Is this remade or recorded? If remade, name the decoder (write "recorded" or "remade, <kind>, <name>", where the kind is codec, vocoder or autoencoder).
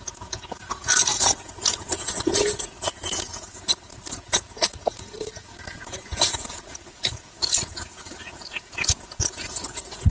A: remade, vocoder, Vocos